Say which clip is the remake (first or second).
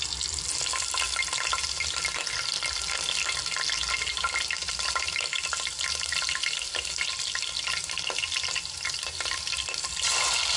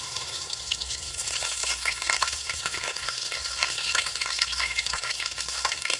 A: second